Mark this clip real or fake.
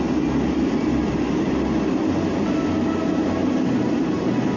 real